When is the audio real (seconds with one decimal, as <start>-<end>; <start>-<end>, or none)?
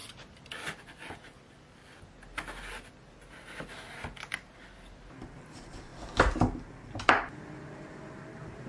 0.0-5.2; 5.9-7.3